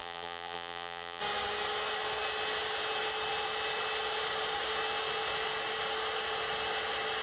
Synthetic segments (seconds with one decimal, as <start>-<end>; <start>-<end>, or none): 0.0-1.2